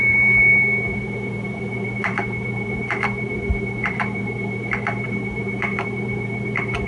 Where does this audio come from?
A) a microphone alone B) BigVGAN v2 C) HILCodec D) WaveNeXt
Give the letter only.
B